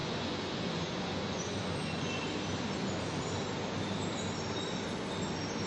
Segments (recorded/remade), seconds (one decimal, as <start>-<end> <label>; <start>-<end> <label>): 0.0-2.2 remade; 2.2-5.7 recorded